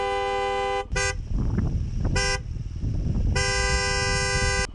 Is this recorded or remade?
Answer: recorded